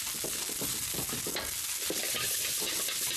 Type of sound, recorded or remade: recorded